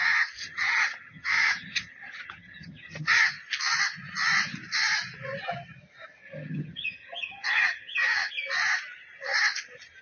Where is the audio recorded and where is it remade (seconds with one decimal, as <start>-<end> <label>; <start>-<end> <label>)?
0.0-0.4 recorded; 0.4-3.2 remade; 3.2-6.2 recorded; 6.2-8.3 remade; 8.3-10.0 recorded